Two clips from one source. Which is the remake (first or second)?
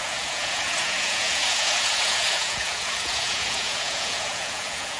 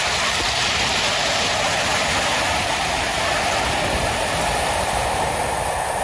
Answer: first